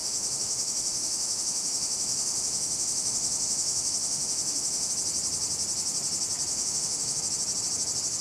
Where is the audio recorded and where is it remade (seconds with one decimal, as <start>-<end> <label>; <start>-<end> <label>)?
0.0-4.9 remade; 4.9-6.5 recorded; 6.5-7.2 remade; 7.2-8.2 recorded